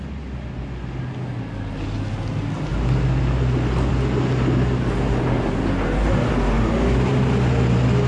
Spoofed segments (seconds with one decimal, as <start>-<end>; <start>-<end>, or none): none